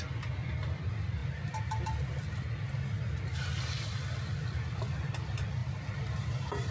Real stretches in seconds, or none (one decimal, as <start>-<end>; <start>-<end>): 0.0-6.7